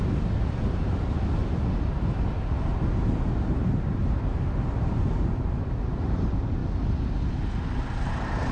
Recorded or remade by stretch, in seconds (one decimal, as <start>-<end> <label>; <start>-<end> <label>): 0.0-1.4 remade; 1.4-3.5 recorded; 3.5-6.6 remade; 6.6-7.5 recorded; 7.5-8.5 remade